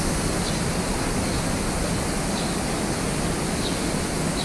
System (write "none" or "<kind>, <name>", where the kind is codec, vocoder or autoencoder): none